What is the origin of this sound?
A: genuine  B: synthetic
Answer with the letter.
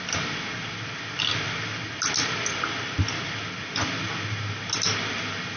A